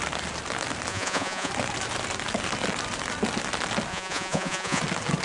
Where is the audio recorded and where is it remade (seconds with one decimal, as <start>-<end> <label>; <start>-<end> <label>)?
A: 0.0-0.9 recorded; 0.9-1.5 remade; 1.5-3.9 recorded; 3.9-4.8 remade; 4.8-5.2 recorded

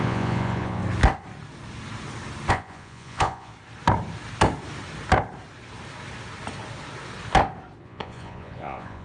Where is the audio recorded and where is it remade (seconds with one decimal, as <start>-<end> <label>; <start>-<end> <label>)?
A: 0.0-0.8 remade; 0.8-2.5 recorded; 2.5-3.5 remade; 3.5-7.8 recorded; 7.8-9.0 remade

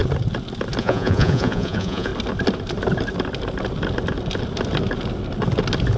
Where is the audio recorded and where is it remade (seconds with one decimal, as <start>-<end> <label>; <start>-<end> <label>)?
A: 0.0-0.8 recorded; 0.8-2.1 remade; 2.1-6.0 recorded

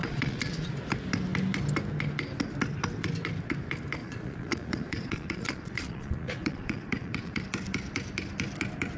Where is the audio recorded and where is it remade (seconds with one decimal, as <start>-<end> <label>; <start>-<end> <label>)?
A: 0.0-0.7 remade; 0.7-4.0 recorded; 4.0-7.4 remade; 7.4-9.0 recorded

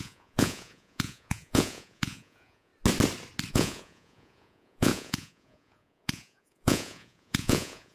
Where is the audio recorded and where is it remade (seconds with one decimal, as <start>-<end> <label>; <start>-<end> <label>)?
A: 0.0-2.7 remade; 2.7-3.5 recorded; 3.5-7.9 remade

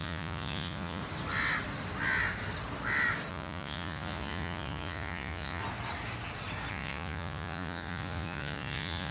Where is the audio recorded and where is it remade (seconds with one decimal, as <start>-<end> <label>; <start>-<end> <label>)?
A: 0.0-1.0 remade; 1.0-3.3 recorded; 3.3-5.6 remade; 5.6-6.7 recorded; 6.7-9.1 remade

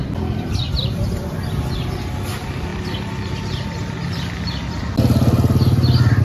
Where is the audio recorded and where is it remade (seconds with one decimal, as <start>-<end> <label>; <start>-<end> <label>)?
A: 0.0-6.2 recorded